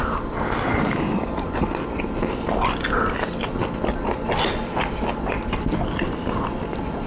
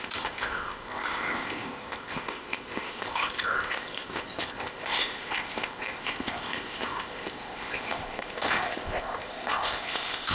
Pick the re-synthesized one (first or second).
second